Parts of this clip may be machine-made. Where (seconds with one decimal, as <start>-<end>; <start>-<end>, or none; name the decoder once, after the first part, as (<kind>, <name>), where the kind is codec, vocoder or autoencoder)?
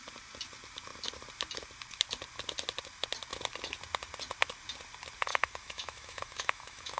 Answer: 5.3-7.0 (autoencoder, DAC-VAE)